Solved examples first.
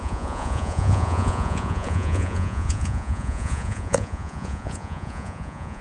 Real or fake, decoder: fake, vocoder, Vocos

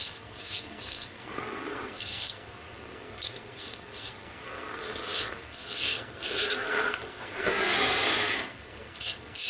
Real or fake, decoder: fake, codec, SNAC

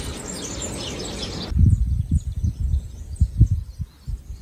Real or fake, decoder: real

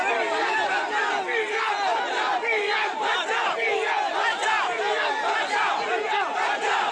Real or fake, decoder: real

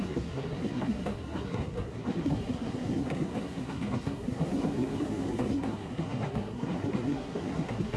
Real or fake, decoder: fake, codec, SNAC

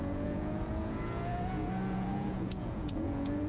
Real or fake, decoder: fake, vocoder, Vocos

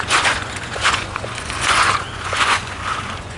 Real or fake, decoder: fake, vocoder, Vocos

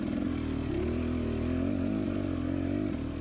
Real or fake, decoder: real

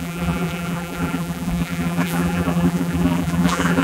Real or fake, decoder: fake, vocoder, BigVGAN v2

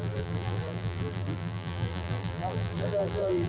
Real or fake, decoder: fake, vocoder, BigVGAN v2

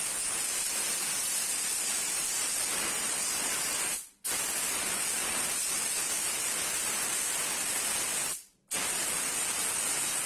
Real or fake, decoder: real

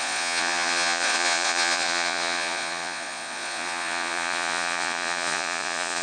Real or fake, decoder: fake, vocoder, Vocos